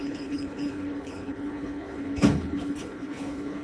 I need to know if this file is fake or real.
fake